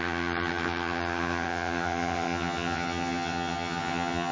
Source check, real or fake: fake